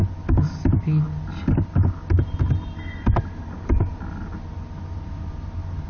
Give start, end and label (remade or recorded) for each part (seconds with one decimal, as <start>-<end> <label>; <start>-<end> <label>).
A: 0.0-5.9 recorded